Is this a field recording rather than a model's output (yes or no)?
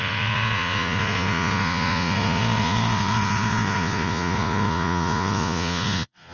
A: no